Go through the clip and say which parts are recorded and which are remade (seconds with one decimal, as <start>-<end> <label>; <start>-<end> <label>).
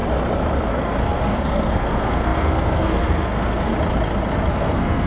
0.0-1.0 recorded; 1.0-3.7 remade; 3.7-4.5 recorded; 4.5-5.1 remade